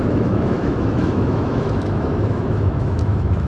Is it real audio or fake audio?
fake